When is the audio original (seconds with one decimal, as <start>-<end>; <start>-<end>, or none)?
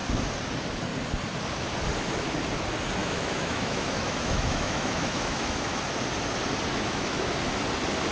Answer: 0.0-3.0; 5.8-6.7; 7.3-8.1